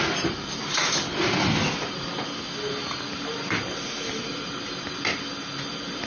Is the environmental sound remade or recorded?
recorded